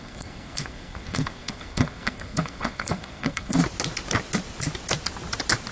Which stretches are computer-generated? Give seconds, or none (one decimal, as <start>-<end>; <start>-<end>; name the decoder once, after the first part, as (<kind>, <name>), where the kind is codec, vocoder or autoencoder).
0.0-3.6 (codec, SNAC)